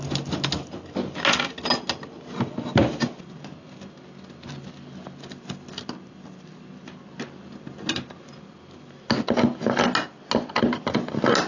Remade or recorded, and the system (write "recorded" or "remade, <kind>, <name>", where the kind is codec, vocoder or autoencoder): recorded